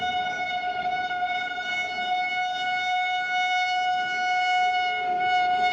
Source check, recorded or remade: remade